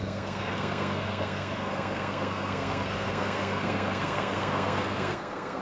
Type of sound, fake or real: fake